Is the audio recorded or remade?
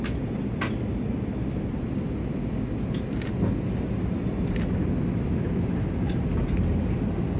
recorded